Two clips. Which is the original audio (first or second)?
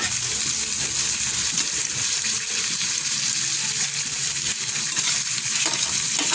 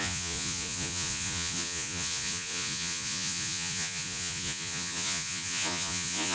first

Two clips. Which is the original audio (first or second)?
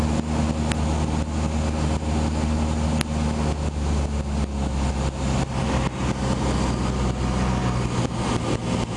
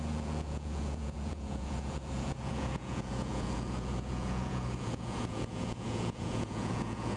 first